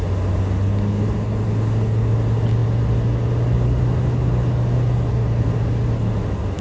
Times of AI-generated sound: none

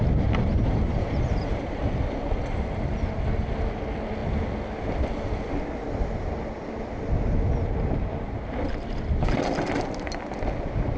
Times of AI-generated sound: 0.0-1.8 (vocoder, BigVGAN v2)

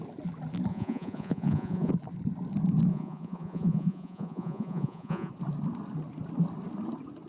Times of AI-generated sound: 0.7-1.9 (vocoder, Vocos); 2.9-5.3

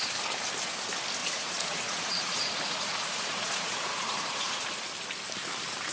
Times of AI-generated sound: 1.2-4.7 (vocoder, Vocos)

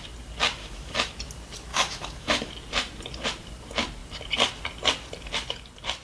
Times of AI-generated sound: 0.6-1.1 (autoencoder, DAC-VAE); 1.7-2.5

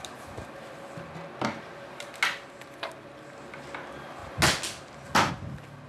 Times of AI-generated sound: none